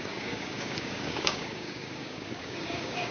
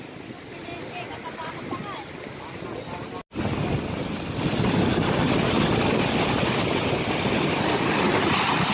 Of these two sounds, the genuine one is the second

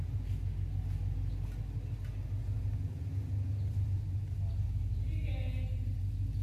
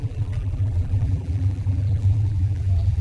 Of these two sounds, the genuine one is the first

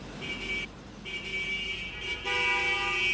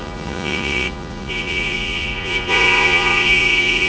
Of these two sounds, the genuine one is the first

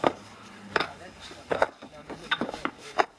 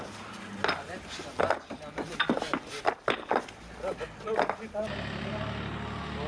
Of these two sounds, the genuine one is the second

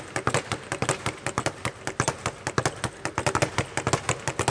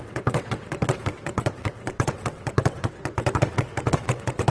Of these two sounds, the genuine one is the first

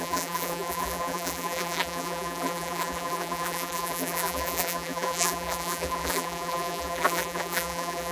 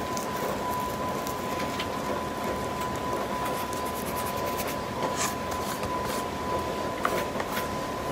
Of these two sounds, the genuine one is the second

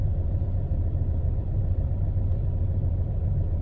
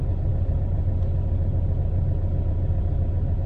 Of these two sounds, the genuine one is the second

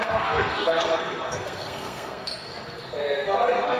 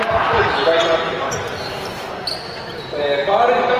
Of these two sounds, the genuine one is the second